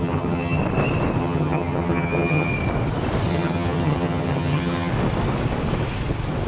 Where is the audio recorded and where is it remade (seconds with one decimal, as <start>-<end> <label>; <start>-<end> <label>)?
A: 0.0-0.6 remade; 0.6-1.2 recorded; 1.2-2.5 remade; 2.5-3.3 recorded; 3.3-4.9 remade; 4.9-6.5 recorded